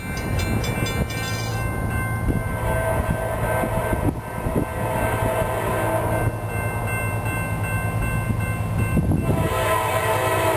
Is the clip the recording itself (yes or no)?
yes